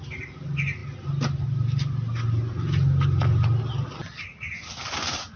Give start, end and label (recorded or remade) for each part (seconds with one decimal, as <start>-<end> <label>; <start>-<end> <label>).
0.0-5.4 recorded